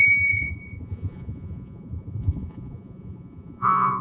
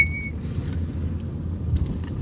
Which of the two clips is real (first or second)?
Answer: second